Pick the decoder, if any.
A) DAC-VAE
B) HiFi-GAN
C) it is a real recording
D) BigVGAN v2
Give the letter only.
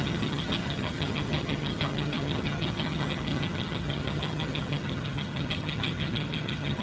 B